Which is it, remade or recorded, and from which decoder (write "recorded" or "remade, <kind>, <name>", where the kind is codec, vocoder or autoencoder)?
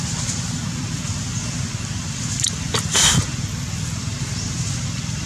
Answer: remade, vocoder, BigVGAN v2